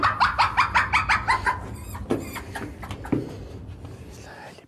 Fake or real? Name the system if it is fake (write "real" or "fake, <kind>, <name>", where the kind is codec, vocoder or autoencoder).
real